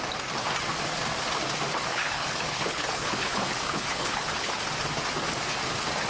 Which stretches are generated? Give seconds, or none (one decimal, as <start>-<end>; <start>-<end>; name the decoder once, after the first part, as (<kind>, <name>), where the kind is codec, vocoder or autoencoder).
1.9-4.6 (codec, HILCodec)